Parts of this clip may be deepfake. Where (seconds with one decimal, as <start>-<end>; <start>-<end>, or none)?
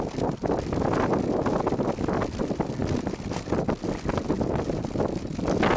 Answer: none